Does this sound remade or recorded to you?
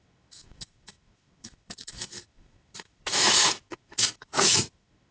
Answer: remade